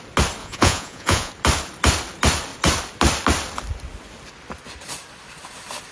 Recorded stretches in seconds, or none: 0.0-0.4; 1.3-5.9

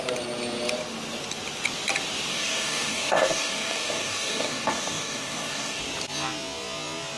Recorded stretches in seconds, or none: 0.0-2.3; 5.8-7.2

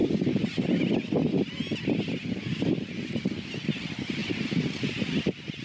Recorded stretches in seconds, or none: 0.0-5.6

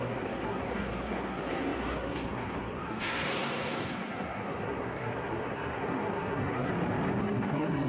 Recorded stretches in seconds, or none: 6.7-7.2

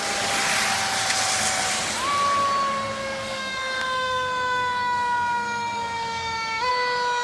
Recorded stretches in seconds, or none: 0.0-3.0; 6.7-7.2

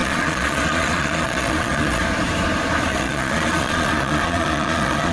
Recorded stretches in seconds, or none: 2.0-2.9

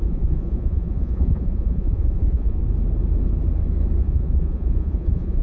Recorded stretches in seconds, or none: 2.6-4.0

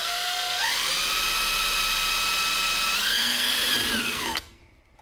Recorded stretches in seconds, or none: 0.9-3.0; 3.5-4.0; 4.6-5.0